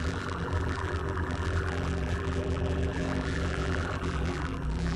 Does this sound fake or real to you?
fake